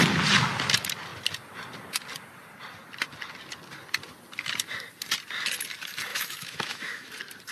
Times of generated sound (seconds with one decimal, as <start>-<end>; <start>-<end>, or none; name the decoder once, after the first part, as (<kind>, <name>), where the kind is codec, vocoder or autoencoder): 6.1-7.1 (autoencoder, DAC-VAE)